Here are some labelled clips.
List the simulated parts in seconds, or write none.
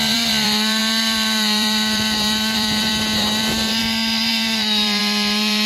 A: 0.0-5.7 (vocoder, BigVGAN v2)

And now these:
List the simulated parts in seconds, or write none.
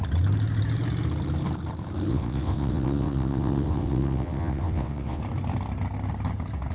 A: 2.1-5.2 (vocoder, WaveNeXt)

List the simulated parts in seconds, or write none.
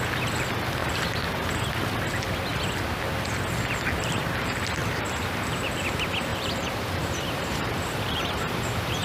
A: 0.8-1.5 (vocoder, BigVGAN v2); 4.8-5.7; 6.3-9.0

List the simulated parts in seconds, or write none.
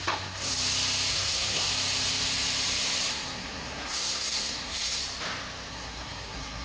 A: 0.0-0.5 (codec, SNAC); 1.1-1.7; 3.1-5.0; 5.7-6.6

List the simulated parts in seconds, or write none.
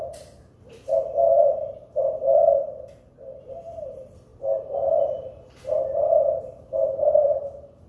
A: 0.0-2.6 (vocoder, BigVGAN v2); 3.4-7.9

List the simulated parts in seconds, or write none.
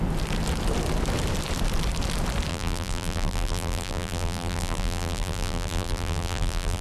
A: 2.5-6.8 (vocoder, BigVGAN v2)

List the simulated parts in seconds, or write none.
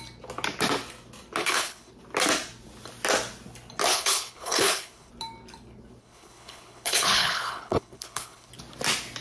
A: 1.4-1.9 (codec, HILCodec); 3.9-5.1; 6.0-8.5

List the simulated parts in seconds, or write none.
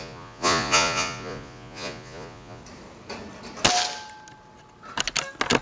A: 0.0-2.6 (vocoder, Vocos)